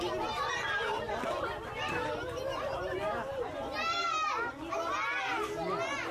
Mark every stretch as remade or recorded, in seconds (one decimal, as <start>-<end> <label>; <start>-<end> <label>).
0.0-6.1 recorded